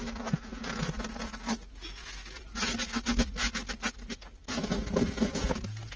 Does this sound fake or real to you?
real